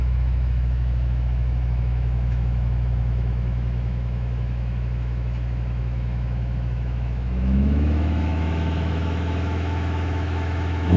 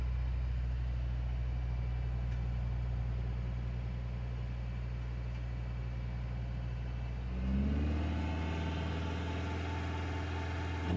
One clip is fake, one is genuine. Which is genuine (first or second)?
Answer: second